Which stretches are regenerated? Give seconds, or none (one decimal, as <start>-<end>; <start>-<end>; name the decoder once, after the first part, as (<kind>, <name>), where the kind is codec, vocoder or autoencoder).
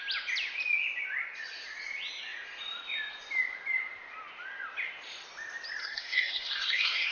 5.8-7.1 (codec, SNAC)